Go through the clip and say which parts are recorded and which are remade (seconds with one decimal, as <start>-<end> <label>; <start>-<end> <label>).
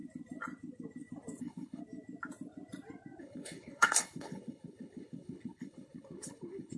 0.0-1.4 recorded; 1.4-1.8 remade; 1.8-3.2 recorded; 3.2-6.8 remade